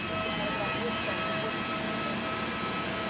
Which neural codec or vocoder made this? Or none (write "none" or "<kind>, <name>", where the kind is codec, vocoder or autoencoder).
none